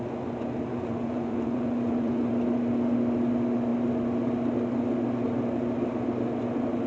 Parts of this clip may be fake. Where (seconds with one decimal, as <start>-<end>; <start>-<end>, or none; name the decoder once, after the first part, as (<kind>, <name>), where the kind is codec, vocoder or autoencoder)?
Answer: 0.7-2.3 (vocoder, Vocos)